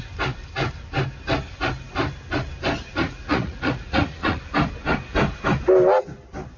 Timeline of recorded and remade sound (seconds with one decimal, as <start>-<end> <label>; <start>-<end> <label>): 0.0-2.9 recorded; 2.9-4.4 remade; 4.4-6.6 recorded

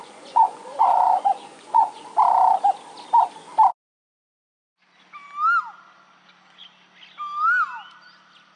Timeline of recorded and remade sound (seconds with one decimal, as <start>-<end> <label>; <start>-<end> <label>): 0.0-2.0 remade; 2.0-8.6 recorded

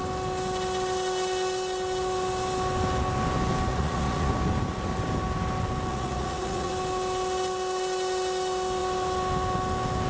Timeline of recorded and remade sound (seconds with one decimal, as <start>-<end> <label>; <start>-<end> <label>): 0.0-3.7 recorded; 3.7-4.3 remade; 4.3-5.9 recorded; 5.9-6.7 remade; 6.7-10.1 recorded

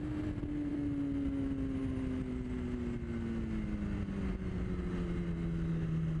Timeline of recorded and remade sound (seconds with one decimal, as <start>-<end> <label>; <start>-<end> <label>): 0.0-6.2 recorded

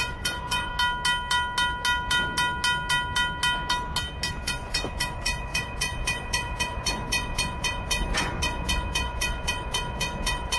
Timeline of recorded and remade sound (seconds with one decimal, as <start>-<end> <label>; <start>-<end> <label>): 0.0-0.7 remade; 0.7-4.3 recorded; 4.3-10.6 remade

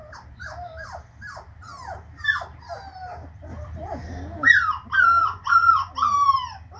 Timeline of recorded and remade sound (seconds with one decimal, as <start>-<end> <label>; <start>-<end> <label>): 0.0-5.2 recorded; 5.2-5.9 remade; 5.9-6.8 recorded

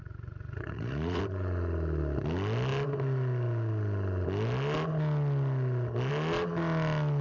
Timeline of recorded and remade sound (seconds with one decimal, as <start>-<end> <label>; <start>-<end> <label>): 0.0-1.2 remade; 1.2-7.2 recorded